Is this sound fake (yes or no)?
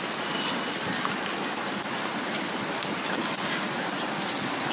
no